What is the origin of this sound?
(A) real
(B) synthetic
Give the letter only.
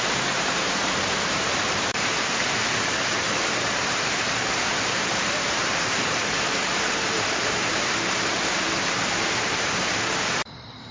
B